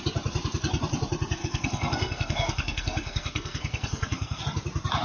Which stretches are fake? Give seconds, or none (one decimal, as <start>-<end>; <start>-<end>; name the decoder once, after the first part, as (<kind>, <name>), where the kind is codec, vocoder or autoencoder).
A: 1.4-4.4 (codec, SNAC)